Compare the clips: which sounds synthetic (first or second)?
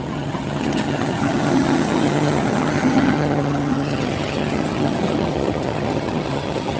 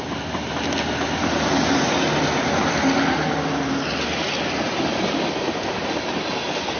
first